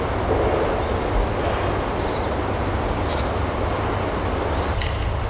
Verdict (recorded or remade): recorded